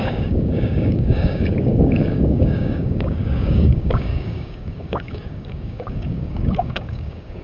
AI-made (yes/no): yes